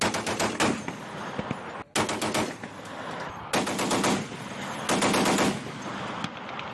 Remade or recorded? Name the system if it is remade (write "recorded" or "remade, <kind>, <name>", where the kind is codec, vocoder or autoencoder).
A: recorded